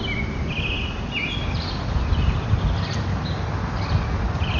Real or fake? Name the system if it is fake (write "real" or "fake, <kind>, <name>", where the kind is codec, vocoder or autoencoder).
real